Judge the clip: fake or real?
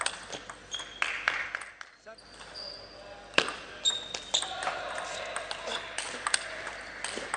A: real